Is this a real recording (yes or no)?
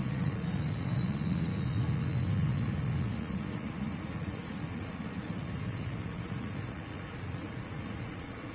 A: no